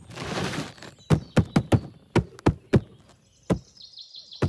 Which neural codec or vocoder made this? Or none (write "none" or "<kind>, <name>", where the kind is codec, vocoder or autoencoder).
none